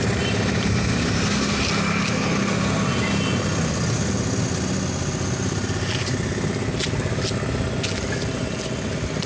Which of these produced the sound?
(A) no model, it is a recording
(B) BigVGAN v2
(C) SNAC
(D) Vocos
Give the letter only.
A